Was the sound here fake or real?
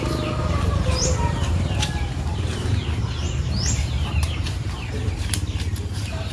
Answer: fake